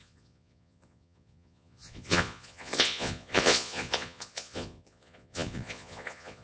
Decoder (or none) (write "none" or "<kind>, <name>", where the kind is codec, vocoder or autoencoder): vocoder, Vocos